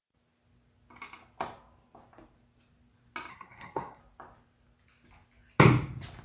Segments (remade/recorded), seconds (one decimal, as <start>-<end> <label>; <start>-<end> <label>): 0.0-3.3 recorded; 3.3-4.0 remade; 4.0-6.2 recorded